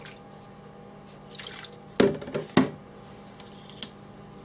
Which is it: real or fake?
real